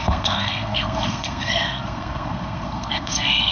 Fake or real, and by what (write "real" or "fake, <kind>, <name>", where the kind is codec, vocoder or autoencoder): fake, codec, SNAC